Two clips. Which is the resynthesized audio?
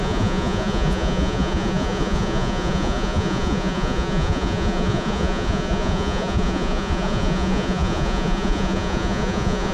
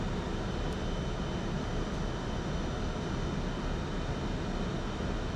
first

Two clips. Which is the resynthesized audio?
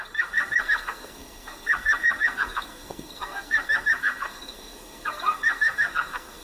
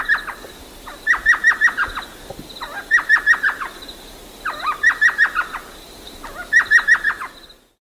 first